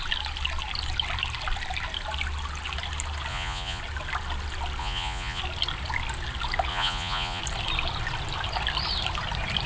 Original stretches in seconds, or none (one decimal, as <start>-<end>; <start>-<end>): 0.0-3.3; 3.8-4.8; 5.4-6.7; 7.4-9.7